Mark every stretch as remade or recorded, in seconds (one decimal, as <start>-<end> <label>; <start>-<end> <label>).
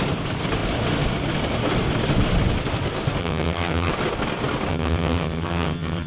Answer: 0.0-3.2 recorded; 3.2-3.9 remade; 3.9-4.7 recorded; 4.7-6.1 remade